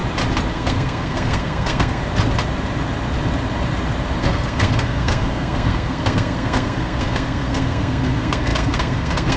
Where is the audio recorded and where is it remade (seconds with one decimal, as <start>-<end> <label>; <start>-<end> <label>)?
0.0-0.5 recorded; 0.5-2.0 remade; 2.0-4.2 recorded; 4.2-9.4 remade